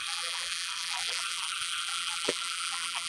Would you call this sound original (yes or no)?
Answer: no